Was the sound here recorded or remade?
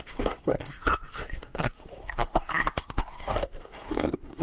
remade